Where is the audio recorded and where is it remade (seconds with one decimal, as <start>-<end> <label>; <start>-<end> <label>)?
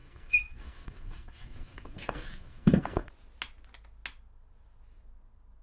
0.0-3.1 remade; 3.1-5.6 recorded